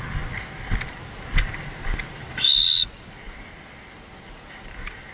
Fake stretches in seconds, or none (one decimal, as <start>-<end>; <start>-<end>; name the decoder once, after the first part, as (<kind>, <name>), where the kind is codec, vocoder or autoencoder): none